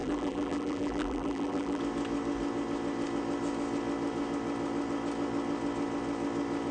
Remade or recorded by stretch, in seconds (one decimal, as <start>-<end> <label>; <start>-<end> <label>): 0.0-1.8 remade; 1.8-6.7 recorded